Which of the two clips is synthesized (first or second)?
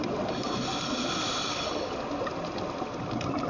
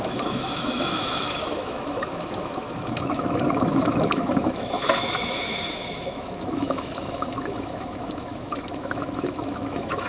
second